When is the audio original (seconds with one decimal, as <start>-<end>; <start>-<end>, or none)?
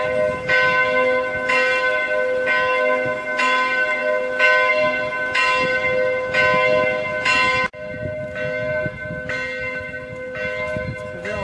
0.0-11.4